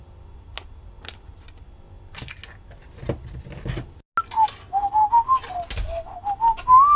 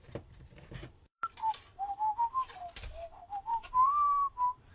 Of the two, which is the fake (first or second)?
second